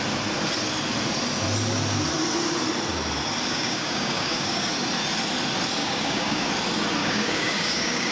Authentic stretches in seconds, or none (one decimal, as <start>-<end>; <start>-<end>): 0.0-3.5; 4.7-5.8; 6.5-7.0

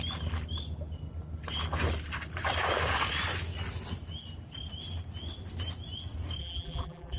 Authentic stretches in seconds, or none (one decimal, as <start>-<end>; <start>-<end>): 0.0-6.4

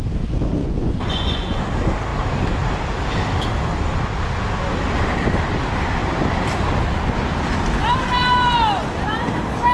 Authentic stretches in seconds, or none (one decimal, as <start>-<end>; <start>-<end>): 0.0-0.6; 1.6-9.7

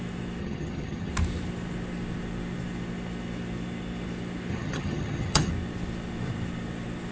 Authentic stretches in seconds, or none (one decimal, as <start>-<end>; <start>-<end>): 0.0-0.4; 1.1-4.5; 5.5-7.1

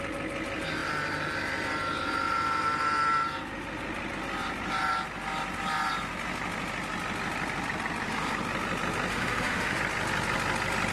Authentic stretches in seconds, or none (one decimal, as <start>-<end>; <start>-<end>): 0.0-9.1; 9.8-10.9

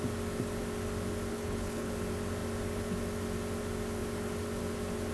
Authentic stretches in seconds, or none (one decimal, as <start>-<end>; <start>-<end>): 0.0-1.3; 1.9-5.1

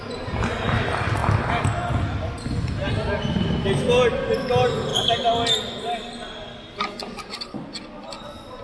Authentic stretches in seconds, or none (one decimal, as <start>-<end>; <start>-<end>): 0.0-8.6

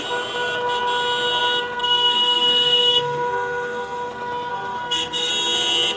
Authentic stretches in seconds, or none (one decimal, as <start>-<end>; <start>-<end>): 0.0-1.8; 4.1-4.5; 5.3-6.0